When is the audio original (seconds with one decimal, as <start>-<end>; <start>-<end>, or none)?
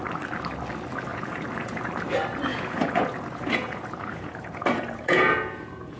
0.0-1.1; 1.9-2.5